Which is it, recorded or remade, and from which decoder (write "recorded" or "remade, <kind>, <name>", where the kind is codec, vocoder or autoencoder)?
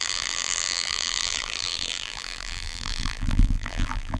remade, vocoder, BigVGAN v2